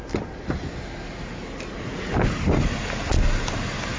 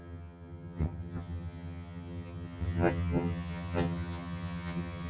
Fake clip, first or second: second